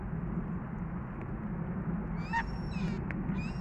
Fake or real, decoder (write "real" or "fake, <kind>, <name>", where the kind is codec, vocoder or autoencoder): real